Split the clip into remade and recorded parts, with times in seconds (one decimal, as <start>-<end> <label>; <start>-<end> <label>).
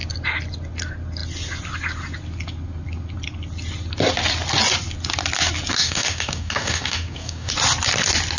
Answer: 0.0-5.7 recorded; 5.7-7.5 remade; 7.5-8.4 recorded